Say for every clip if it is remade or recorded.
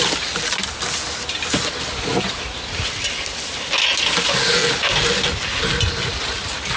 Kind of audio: recorded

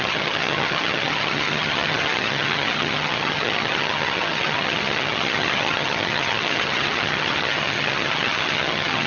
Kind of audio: remade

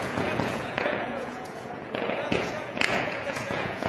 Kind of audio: remade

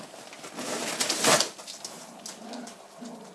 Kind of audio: recorded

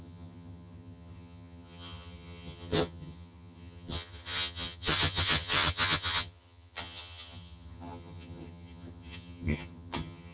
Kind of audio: remade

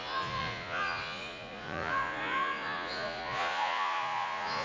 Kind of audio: remade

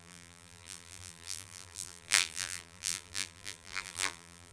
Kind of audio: remade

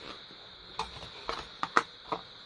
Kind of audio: recorded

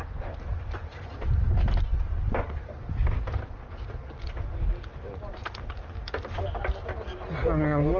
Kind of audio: recorded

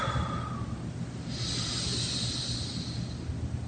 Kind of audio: recorded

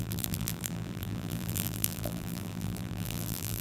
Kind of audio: remade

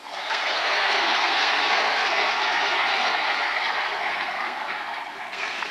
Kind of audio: remade